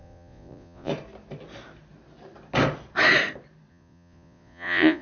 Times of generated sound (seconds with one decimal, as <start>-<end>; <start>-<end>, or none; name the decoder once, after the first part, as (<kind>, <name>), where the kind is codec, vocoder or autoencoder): 0.0-0.9 (vocoder, Vocos); 3.7-5.0